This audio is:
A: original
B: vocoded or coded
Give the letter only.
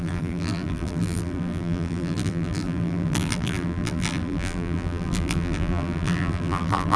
B